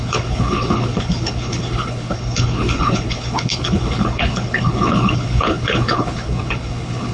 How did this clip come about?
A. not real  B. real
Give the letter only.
A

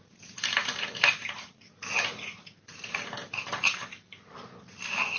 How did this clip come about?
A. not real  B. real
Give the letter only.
B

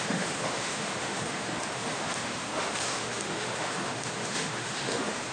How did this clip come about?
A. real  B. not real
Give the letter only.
B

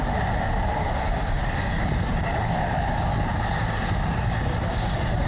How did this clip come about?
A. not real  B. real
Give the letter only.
A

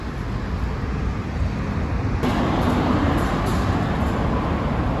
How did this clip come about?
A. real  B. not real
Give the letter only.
A